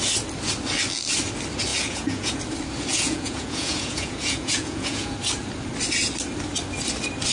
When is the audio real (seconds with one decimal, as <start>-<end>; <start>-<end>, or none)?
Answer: 0.0-1.7; 2.4-2.9; 5.1-7.3